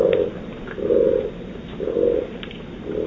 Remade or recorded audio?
recorded